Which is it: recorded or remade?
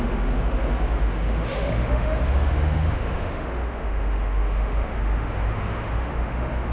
remade